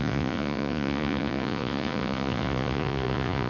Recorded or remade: remade